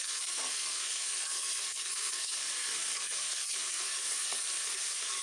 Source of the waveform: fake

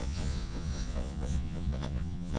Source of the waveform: fake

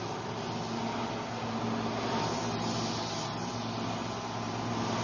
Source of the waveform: real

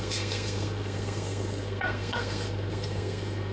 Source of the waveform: fake